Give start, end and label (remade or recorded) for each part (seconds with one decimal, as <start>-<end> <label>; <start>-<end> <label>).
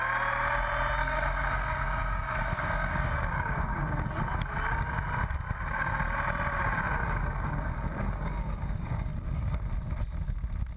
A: 0.0-1.0 recorded; 1.0-3.8 remade; 3.8-7.0 recorded; 7.0-9.7 remade; 9.7-10.8 recorded